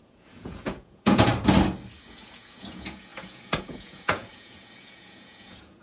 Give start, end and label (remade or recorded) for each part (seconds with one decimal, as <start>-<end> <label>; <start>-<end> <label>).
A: 0.0-1.3 remade; 1.3-2.1 recorded; 2.1-5.8 remade